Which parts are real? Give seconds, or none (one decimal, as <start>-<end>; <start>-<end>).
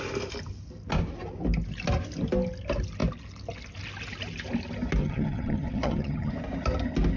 0.0-5.0; 6.3-7.2